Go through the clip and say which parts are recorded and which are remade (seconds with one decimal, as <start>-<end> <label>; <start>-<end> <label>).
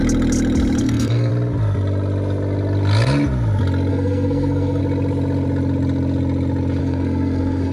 0.0-0.8 recorded; 0.8-1.3 remade; 1.3-3.9 recorded; 3.9-4.8 remade; 4.8-6.8 recorded; 6.8-7.7 remade